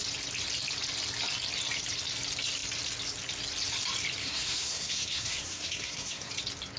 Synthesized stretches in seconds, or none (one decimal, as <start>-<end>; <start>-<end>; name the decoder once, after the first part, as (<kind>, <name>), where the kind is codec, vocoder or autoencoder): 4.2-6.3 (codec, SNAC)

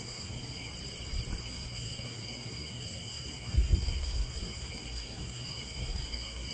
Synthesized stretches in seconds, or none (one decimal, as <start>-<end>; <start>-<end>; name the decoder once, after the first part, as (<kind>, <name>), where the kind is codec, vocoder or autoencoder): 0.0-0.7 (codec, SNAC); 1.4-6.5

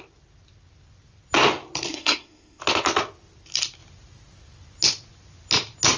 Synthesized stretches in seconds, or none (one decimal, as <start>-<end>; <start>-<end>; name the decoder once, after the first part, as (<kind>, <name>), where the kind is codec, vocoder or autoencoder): 1.9-2.6 (codec, SNAC)